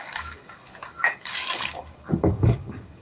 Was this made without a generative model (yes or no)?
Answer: no